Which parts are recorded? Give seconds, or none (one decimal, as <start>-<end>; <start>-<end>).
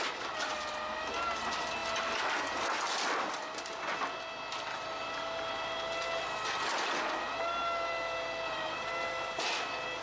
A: 0.0-10.0